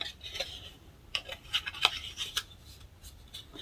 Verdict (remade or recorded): remade